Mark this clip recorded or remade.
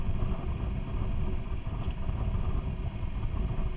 recorded